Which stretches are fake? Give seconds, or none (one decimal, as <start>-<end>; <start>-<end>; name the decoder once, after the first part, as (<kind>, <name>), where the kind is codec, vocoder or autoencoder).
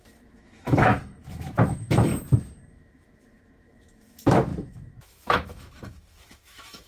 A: 0.0-2.1 (autoencoder, DAC-VAE); 2.7-6.9